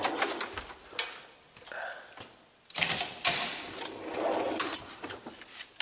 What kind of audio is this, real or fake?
real